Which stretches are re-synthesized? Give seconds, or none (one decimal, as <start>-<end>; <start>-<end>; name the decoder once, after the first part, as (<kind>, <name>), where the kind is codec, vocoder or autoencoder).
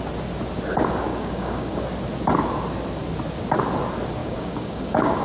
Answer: 1.1-1.8 (codec, DAC); 4.2-5.2